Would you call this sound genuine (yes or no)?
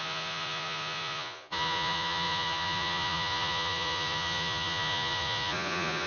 no